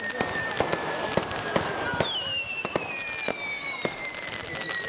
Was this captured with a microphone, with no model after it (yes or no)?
yes